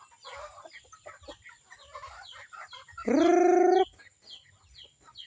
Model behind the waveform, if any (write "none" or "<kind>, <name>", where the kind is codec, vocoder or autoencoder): none